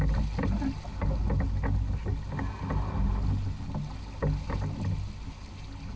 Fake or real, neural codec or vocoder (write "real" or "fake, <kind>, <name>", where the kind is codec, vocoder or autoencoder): real